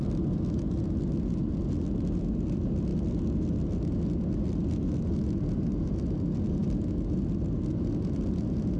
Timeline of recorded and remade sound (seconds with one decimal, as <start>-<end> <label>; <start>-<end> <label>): 0.0-8.8 recorded